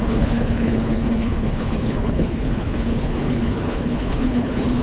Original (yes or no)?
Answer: no